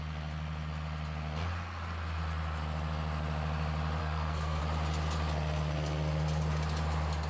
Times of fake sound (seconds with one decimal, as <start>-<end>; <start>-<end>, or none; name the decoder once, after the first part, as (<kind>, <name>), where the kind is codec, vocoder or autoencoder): 4.0-4.6 (codec, SNAC)